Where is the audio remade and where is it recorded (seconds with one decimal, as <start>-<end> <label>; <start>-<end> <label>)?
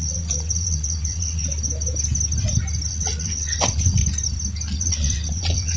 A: 0.0-1.5 remade; 1.5-2.9 recorded; 2.9-4.0 remade; 4.0-4.8 recorded; 4.8-5.8 remade